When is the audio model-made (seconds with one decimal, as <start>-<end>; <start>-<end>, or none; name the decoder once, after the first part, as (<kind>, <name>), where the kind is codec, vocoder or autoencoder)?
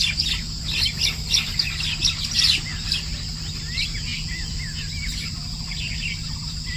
4.1-4.6 (vocoder, BigVGAN v2)